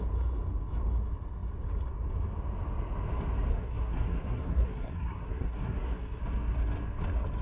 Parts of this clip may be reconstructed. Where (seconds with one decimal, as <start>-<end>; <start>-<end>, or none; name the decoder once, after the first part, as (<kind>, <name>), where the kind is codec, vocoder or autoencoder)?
3.5-6.2 (codec, SNAC)